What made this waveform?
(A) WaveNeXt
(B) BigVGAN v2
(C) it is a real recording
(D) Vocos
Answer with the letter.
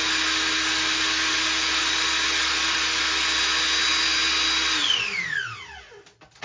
C